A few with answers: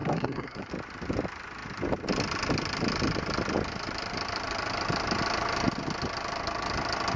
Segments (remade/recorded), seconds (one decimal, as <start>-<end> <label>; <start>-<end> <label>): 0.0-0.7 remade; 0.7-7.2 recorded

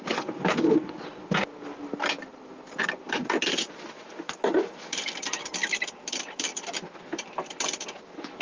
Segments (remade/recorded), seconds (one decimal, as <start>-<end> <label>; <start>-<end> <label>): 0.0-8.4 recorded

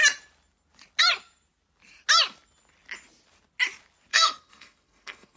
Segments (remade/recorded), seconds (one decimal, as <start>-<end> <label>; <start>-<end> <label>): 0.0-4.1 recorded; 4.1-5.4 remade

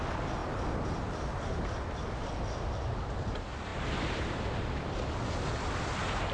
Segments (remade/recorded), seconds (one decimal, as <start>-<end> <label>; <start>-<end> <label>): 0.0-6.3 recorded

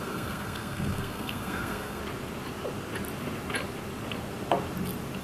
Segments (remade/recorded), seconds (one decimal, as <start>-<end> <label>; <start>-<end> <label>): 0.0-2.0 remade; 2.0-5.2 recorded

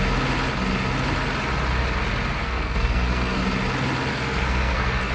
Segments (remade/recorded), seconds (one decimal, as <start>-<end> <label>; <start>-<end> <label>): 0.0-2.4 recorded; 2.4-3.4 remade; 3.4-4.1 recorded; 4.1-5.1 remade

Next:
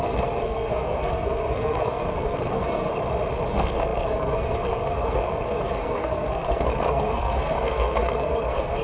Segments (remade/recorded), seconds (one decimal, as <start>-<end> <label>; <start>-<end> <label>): 0.0-2.9 remade; 2.9-3.5 recorded; 3.5-8.8 remade

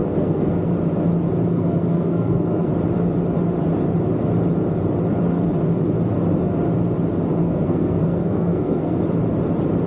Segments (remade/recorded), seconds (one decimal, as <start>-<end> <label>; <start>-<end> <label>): 0.0-0.7 remade; 0.7-1.5 recorded; 1.5-2.7 remade; 2.7-7.4 recorded; 7.4-9.0 remade; 9.0-9.9 recorded